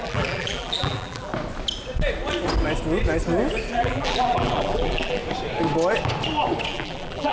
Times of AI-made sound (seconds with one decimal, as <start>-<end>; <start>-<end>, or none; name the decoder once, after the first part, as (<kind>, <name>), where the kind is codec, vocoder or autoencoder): 0.0-1.3 (vocoder, BigVGAN v2); 3.7-5.2; 6.7-7.3